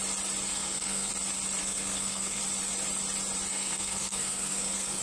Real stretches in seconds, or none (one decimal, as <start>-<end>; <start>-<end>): 0.0-0.5; 1.1-1.6; 2.4-3.5